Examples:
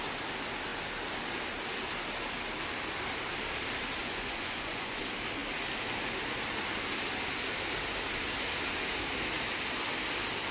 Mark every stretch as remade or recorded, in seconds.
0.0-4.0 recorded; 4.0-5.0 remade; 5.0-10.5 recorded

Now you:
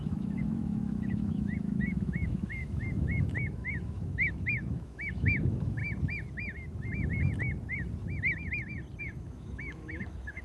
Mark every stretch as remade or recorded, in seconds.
0.0-5.8 remade; 5.8-9.0 recorded; 9.0-10.4 remade